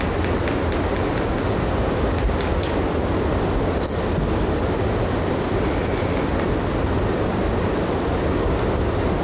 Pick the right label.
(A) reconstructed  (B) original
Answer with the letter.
B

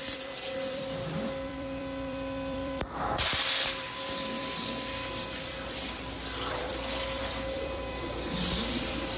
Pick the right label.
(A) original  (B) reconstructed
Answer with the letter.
B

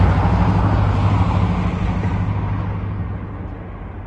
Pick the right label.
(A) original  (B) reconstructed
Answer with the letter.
A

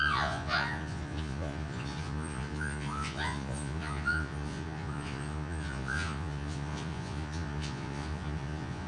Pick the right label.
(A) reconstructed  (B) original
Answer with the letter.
A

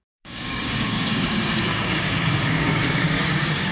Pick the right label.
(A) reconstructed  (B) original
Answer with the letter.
A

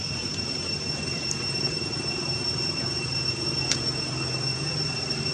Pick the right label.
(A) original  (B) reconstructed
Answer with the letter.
B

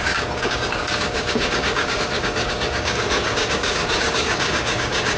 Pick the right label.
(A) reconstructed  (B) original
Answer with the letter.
A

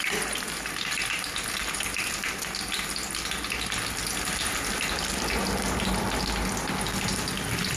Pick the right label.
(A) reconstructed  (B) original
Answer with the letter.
B